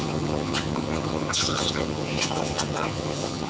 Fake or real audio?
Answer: fake